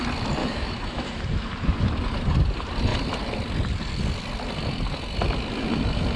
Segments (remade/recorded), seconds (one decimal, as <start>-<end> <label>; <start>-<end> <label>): 0.0-0.4 recorded; 0.4-1.2 remade; 1.2-6.2 recorded